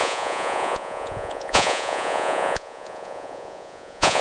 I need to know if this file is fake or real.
fake